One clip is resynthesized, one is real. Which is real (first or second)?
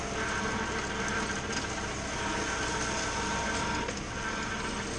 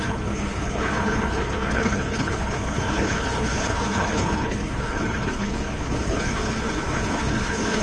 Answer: first